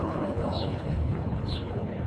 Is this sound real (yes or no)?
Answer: no